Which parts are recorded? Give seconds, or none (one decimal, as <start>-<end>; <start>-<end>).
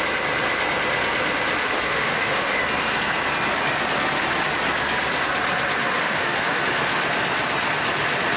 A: 0.0-1.6; 2.6-6.0; 6.6-8.4